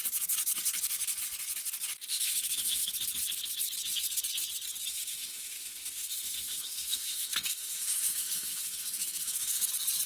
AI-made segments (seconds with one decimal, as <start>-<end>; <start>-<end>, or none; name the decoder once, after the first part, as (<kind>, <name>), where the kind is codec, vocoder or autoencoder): 2.1-2.9 (autoencoder, DAC-VAE); 4.9-9.7